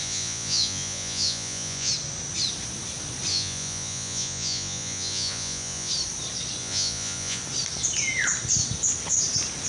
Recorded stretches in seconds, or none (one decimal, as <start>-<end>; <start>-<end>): 1.9-3.3; 5.9-6.6; 7.4-9.7